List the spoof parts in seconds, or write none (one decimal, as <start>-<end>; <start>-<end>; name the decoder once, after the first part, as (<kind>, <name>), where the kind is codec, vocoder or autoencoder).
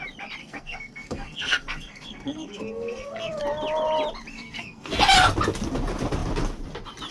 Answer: 0.4-3.4 (codec, SNAC); 4.3-5.0